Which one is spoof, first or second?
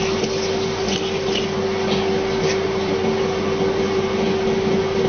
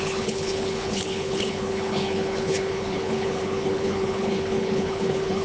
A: second